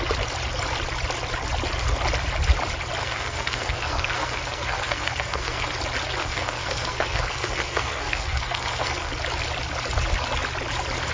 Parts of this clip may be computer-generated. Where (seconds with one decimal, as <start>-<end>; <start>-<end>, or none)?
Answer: 3.0-5.7; 6.2-9.1